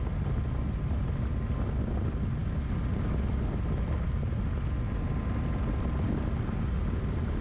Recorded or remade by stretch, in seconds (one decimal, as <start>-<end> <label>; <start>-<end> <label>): 0.0-7.4 recorded